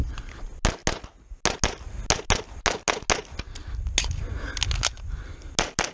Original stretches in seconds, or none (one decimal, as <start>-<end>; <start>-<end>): 0.0-5.9